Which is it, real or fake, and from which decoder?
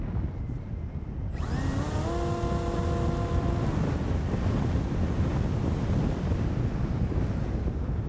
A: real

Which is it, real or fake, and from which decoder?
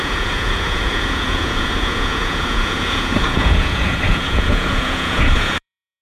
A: fake, vocoder, Vocos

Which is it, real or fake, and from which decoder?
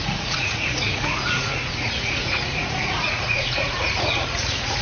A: fake, vocoder, Vocos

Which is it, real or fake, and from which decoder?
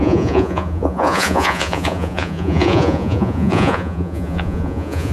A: fake, vocoder, Vocos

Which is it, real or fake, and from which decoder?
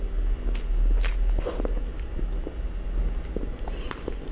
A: real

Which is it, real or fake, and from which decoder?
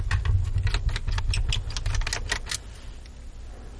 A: real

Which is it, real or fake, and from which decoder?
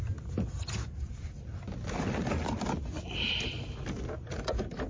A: real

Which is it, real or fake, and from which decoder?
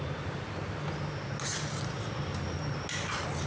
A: real